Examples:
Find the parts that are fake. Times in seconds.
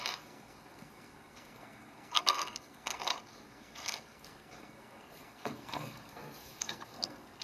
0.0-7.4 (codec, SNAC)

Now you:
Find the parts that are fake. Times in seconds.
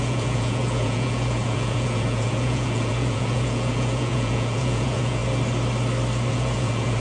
0.0-5.2 (vocoder, Vocos); 6.3-7.0